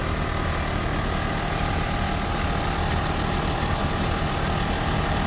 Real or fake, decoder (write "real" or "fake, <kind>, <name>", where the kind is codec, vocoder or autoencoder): real